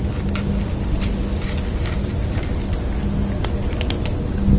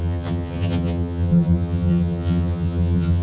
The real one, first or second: first